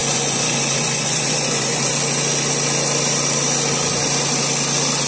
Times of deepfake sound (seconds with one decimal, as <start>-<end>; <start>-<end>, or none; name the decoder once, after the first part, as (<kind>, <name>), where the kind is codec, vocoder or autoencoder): 0.0-1.9 (vocoder, Vocos)